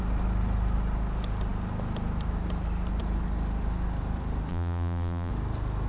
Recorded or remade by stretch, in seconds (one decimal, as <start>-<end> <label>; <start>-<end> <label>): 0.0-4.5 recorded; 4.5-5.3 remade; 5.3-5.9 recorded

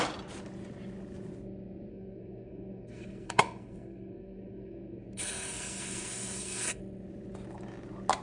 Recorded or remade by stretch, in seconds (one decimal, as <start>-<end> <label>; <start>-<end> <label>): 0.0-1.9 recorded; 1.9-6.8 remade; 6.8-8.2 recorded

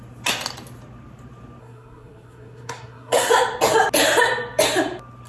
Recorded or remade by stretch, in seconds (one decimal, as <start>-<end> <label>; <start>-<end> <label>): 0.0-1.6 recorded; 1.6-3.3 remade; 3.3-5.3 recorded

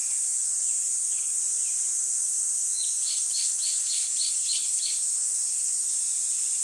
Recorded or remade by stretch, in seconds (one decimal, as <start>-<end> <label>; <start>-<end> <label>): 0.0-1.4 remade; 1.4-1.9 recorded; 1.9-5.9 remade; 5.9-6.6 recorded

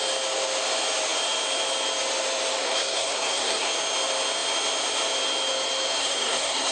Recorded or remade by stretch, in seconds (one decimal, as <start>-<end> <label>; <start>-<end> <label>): 0.0-2.6 recorded; 2.6-3.7 remade; 3.7-6.0 recorded; 6.0-6.7 remade

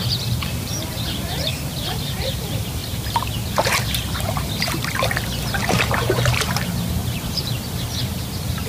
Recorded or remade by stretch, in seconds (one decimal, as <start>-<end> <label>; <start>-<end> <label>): 0.0-2.8 remade; 2.8-5.6 recorded; 5.6-8.7 remade

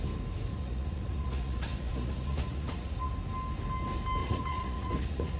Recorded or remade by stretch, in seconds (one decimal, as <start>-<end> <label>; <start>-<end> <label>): 0.0-0.5 recorded; 0.5-3.1 remade; 3.1-4.2 recorded; 4.2-5.4 remade

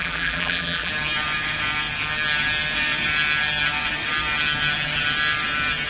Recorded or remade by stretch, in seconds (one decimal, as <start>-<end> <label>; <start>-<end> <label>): 0.0-0.9 remade; 0.9-5.9 recorded